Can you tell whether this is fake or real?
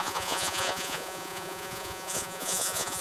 fake